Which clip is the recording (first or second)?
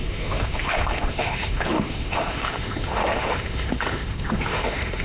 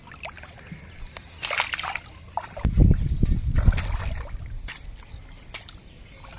second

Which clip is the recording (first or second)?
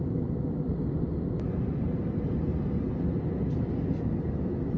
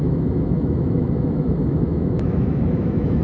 first